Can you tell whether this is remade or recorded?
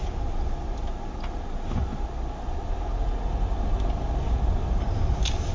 recorded